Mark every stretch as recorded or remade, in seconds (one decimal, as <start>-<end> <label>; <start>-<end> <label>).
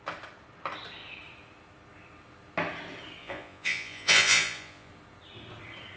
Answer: 0.0-3.2 recorded; 3.2-4.9 remade; 4.9-6.0 recorded